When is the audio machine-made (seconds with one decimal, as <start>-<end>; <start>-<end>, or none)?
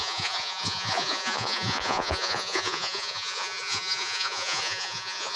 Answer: 0.0-5.4